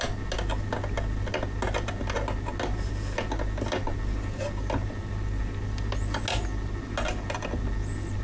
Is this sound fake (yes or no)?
no